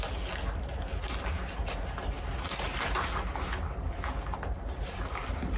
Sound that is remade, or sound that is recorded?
recorded